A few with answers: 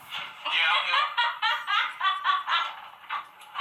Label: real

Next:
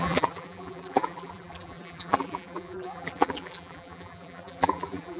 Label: fake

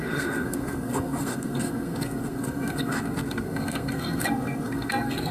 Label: fake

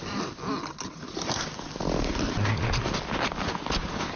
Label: real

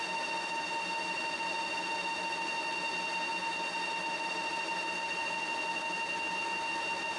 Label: real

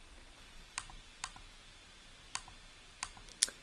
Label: real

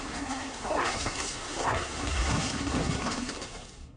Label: fake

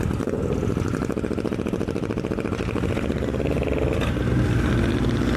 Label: real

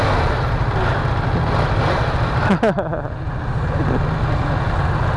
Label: real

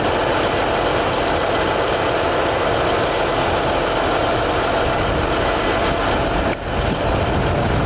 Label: real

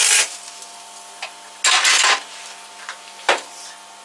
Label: real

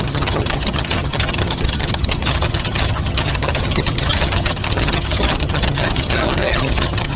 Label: fake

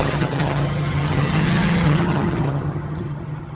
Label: fake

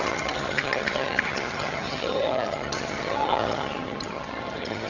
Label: fake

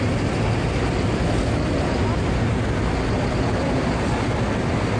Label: real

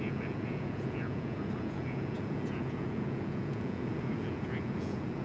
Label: fake